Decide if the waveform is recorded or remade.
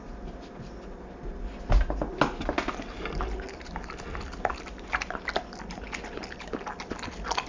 recorded